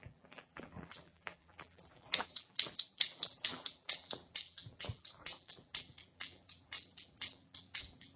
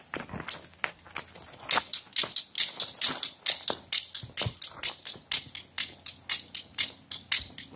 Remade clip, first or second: first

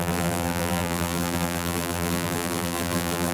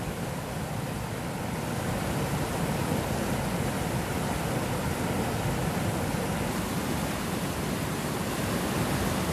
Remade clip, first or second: first